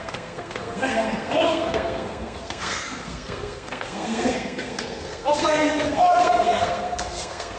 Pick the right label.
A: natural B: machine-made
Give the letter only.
B